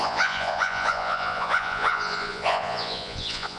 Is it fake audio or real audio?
fake